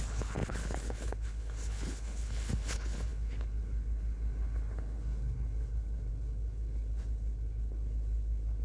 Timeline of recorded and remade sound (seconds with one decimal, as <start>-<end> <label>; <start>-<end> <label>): 0.0-8.6 remade